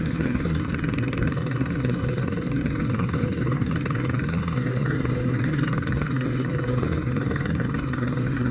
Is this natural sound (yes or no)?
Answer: no